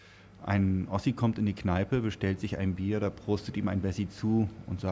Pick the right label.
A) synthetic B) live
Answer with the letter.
B